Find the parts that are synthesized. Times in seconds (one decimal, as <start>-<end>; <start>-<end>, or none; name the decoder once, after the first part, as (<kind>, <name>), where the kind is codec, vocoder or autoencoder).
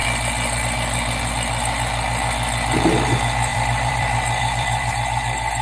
3.5-4.9 (vocoder, BigVGAN v2)